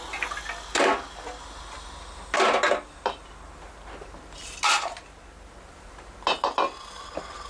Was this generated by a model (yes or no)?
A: no